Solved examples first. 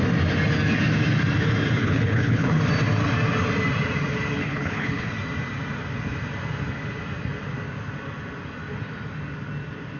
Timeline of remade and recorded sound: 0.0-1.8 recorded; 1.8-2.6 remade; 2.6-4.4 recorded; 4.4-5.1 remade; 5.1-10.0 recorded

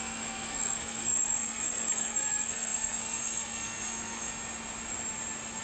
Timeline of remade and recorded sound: 0.0-4.3 remade; 4.3-5.6 recorded